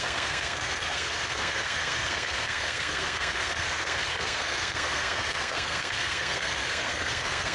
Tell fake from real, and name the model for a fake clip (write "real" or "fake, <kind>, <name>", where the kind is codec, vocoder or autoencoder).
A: fake, codec, SNAC